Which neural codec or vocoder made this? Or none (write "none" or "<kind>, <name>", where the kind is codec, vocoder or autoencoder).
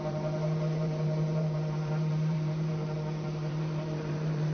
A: vocoder, BigVGAN v2